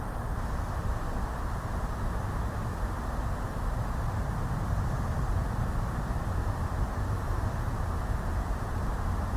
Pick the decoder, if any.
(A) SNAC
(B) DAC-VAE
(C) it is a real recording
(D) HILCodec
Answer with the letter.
C